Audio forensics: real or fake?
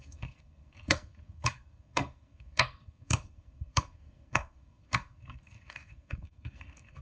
fake